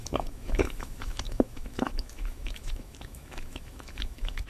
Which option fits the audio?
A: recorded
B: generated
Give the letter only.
B